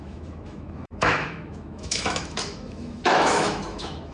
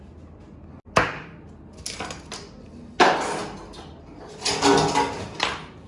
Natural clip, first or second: second